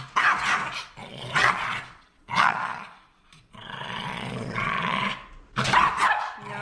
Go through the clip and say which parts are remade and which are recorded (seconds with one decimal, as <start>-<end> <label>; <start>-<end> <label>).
0.0-1.0 recorded; 1.0-5.0 remade; 5.0-6.6 recorded